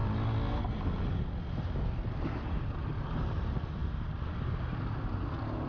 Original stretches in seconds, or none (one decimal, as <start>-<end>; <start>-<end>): 0.0-5.7